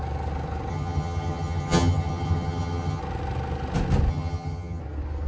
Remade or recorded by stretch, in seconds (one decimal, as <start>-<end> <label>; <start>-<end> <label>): 0.0-0.7 recorded; 0.7-3.0 remade; 3.0-4.1 recorded; 4.1-4.8 remade; 4.8-5.3 recorded